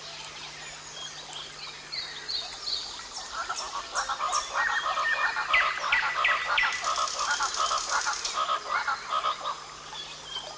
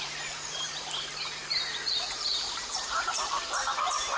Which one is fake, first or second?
second